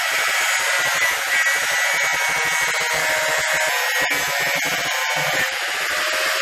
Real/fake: real